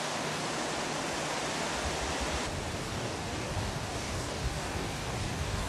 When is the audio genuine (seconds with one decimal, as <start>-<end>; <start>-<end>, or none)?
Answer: 0.4-2.8